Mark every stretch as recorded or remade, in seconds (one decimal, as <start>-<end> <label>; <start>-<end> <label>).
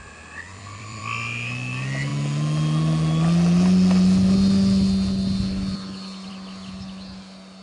0.0-0.5 recorded; 0.5-1.0 remade; 1.0-7.6 recorded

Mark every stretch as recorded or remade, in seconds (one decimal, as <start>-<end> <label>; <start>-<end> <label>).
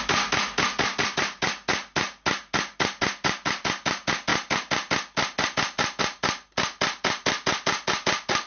0.0-8.5 recorded